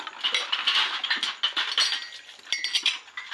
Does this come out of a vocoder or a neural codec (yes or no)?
no